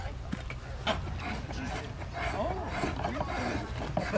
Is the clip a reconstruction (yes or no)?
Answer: no